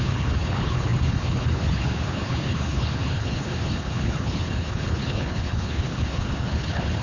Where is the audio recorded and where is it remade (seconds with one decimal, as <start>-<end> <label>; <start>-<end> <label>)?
0.0-7.0 remade